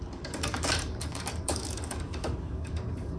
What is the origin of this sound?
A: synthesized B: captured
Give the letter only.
A